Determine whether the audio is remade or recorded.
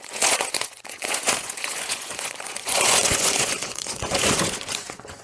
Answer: remade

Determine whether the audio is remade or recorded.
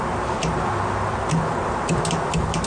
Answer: recorded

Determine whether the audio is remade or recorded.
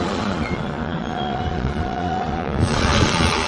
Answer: remade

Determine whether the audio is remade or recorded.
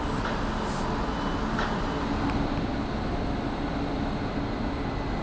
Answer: recorded